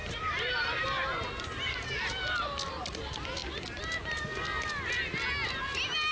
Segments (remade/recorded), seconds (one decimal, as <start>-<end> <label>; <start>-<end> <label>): 0.0-1.9 remade; 1.9-6.1 recorded